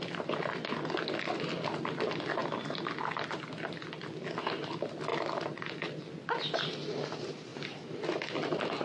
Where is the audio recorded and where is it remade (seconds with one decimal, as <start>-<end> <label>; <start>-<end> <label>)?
0.0-8.8 recorded